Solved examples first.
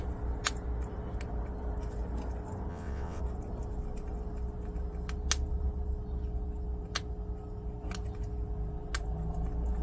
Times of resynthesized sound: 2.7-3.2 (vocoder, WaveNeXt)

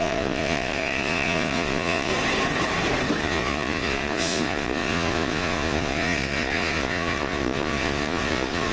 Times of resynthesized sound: 0.0-2.1 (vocoder, Vocos); 3.2-8.7

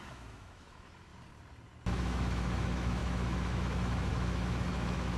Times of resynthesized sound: 0.0-1.1 (autoencoder, DAC-VAE); 1.9-5.2

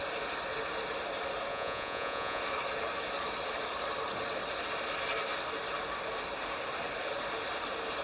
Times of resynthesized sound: 1.5-2.4 (vocoder, Vocos)

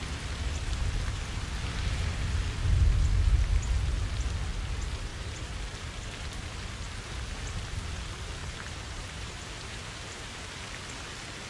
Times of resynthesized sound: 5.1-6.1 (vocoder, BigVGAN v2); 8.4-10.4

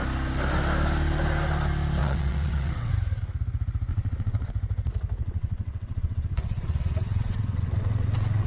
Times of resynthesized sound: 2.0-2.9 (vocoder, WaveNeXt); 3.9-4.5; 5.2-8.5

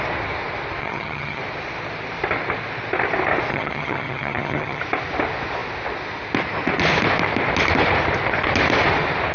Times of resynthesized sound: 0.8-1.4 (vocoder, HiFi-GAN); 3.5-4.8

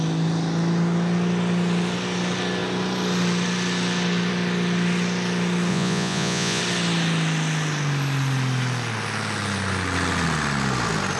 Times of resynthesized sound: 5.7-6.6 (vocoder, Vocos)